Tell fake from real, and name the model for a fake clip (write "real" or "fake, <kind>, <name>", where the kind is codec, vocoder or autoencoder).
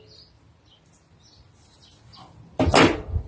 real